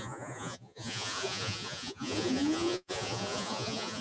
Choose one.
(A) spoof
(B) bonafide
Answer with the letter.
A